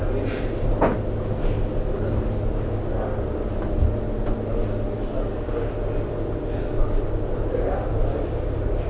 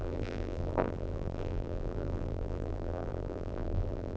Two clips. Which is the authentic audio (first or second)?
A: first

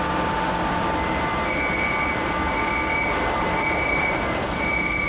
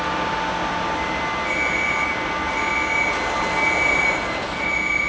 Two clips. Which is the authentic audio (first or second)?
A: second